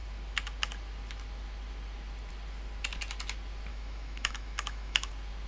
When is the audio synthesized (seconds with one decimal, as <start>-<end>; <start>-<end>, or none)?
3.7-5.1